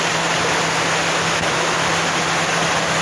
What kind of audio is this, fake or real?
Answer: real